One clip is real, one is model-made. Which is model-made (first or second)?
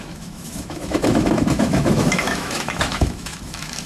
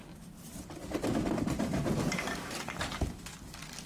first